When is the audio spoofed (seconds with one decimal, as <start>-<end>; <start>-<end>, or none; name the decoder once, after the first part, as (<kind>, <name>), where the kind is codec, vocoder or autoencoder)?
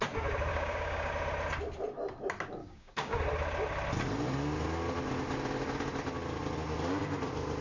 0.5-1.1 (codec, DAC); 2.6-3.2